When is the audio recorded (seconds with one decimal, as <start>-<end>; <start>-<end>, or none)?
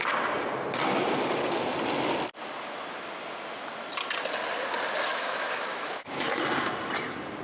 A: 0.0-5.1; 6.4-7.4